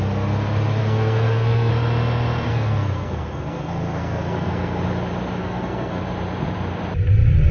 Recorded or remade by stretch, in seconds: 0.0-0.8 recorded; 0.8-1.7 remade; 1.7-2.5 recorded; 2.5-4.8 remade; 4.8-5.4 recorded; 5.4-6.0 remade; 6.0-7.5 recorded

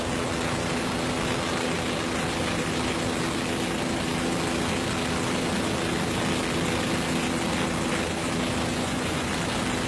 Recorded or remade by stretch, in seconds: 0.0-8.7 recorded; 8.7-9.3 remade; 9.3-9.9 recorded

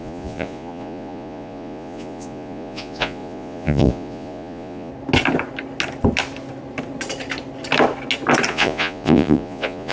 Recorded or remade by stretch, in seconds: 0.0-4.9 remade; 4.9-8.5 recorded; 8.5-9.9 remade

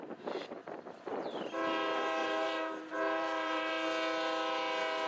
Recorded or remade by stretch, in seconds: 0.0-2.2 recorded; 2.2-3.7 remade; 3.7-5.1 recorded